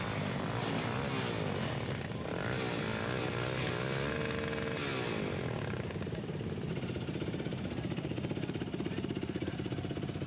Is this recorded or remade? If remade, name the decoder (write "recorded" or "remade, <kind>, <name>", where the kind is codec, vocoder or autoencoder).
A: recorded